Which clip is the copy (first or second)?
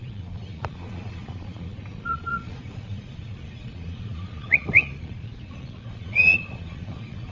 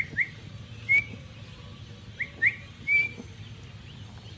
first